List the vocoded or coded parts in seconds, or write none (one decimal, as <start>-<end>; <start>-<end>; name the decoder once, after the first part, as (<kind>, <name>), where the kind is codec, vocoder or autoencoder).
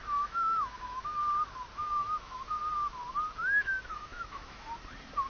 0.0-1.2 (autoencoder, DAC-VAE); 1.8-2.5; 3.4-4.7